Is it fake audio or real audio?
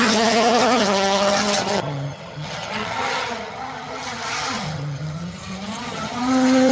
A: fake